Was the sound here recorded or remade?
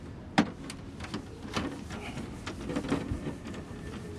recorded